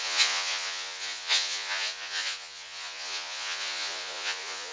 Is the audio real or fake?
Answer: fake